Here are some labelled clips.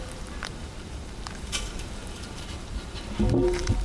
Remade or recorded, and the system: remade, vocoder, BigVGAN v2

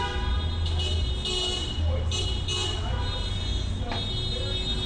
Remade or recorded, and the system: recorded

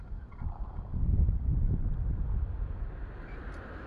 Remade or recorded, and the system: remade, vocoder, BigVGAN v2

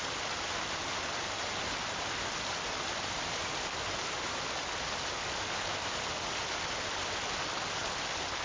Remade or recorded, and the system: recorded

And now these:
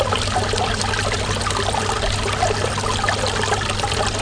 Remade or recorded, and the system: recorded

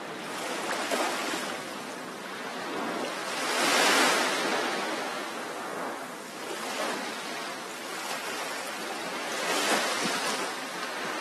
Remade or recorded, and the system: recorded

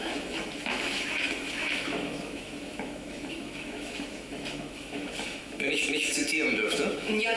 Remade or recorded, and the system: remade, autoencoder, DAC-VAE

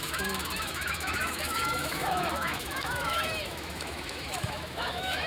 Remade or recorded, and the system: remade, autoencoder, DAC-VAE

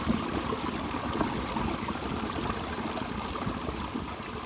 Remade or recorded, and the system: recorded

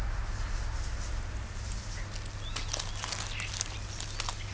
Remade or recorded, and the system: recorded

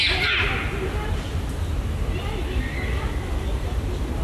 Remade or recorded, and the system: recorded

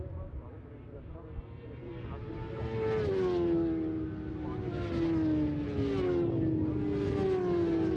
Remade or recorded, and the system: recorded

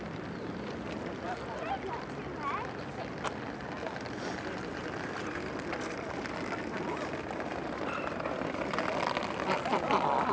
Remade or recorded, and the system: recorded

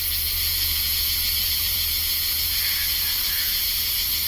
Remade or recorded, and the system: remade, vocoder, Vocos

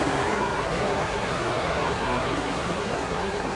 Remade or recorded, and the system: remade, codec, SNAC